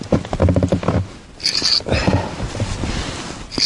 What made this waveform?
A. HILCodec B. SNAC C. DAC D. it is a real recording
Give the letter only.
D